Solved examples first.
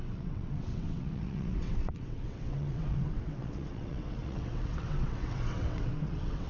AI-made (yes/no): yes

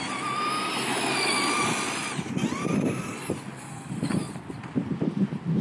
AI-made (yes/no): no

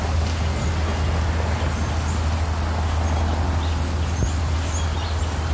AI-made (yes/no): no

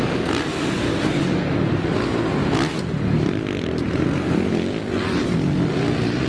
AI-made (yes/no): no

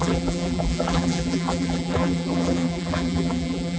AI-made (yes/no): yes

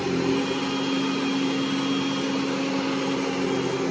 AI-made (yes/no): no